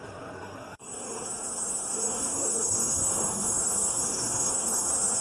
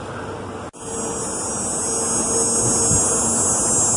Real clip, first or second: second